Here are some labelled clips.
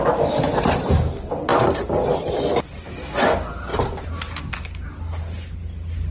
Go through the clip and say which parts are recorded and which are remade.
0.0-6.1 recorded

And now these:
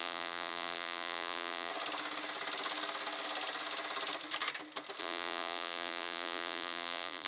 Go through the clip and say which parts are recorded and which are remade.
0.0-1.7 remade; 1.7-5.0 recorded; 5.0-7.3 remade